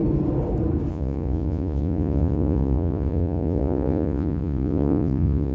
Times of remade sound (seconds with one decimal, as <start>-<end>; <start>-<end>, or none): 0.9-5.5